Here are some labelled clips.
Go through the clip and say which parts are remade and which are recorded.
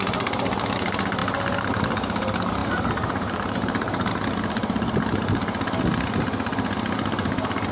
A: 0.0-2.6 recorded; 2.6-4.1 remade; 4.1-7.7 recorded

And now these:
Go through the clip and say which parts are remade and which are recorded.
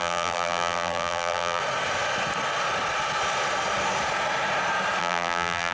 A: 0.0-1.6 remade; 1.6-5.0 recorded; 5.0-5.7 remade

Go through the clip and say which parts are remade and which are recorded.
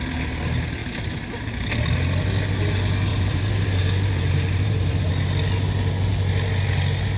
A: 0.0-0.8 recorded; 0.8-1.4 remade; 1.4-3.1 recorded; 3.1-5.1 remade; 5.1-7.2 recorded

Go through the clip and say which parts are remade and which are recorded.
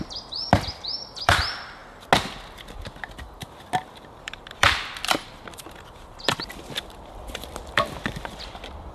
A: 0.0-1.8 remade; 1.8-4.2 recorded; 4.2-8.9 remade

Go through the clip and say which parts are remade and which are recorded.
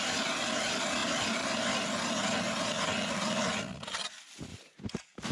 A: 0.0-4.5 recorded; 4.5-5.3 remade